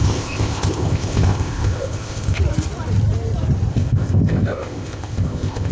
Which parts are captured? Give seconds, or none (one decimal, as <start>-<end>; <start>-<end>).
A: 2.4-3.7